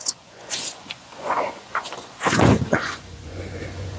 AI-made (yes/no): yes